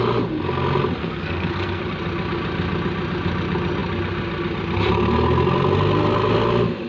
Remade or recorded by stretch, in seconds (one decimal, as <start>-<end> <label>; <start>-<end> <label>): 0.0-1.0 recorded; 1.0-1.8 remade; 1.8-6.9 recorded